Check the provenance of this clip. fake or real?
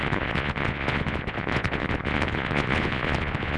fake